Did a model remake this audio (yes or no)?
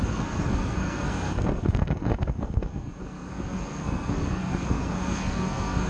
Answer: yes